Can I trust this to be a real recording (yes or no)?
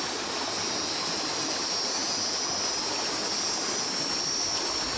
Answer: yes